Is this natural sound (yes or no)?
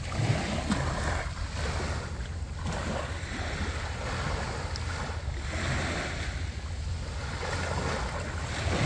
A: yes